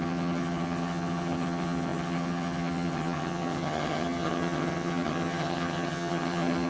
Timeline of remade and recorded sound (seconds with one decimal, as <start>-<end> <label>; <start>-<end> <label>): 0.0-6.7 remade